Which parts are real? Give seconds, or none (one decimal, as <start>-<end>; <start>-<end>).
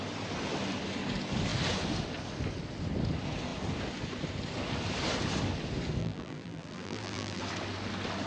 0.0-6.0; 7.4-8.3